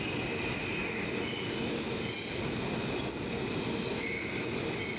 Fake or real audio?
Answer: real